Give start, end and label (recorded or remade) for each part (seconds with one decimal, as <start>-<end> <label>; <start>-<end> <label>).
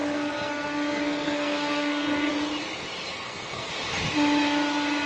0.0-2.3 remade; 2.3-3.1 recorded; 3.1-3.7 remade; 3.7-5.1 recorded